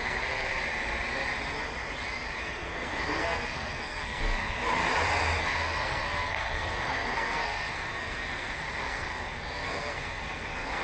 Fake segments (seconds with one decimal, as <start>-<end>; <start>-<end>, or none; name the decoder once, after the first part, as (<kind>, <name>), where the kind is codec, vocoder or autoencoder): 0.0-0.5 (codec, SNAC); 2.4-4.8; 5.4-10.8